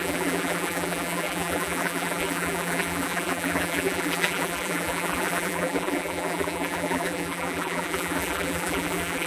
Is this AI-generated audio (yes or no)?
yes